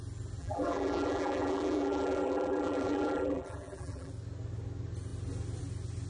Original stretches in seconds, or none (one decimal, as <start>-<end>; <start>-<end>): 0.0-0.4; 4.1-6.1

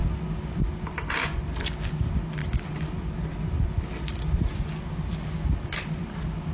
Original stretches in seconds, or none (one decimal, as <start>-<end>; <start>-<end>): 0.0-6.5

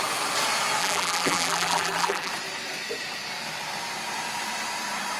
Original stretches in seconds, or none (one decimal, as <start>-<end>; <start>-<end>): 0.0-0.8; 2.3-5.2

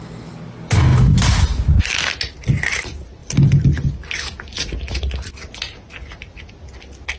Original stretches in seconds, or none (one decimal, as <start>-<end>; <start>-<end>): 0.0-7.2

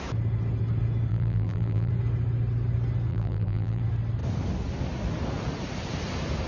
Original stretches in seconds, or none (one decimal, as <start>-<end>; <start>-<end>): 0.0-1.1; 1.9-3.1; 3.8-6.5

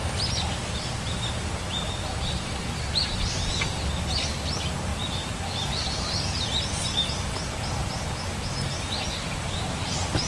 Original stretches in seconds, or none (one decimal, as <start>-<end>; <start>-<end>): 0.0-10.3

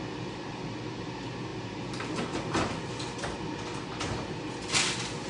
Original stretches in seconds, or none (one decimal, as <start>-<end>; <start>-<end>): 0.0-5.3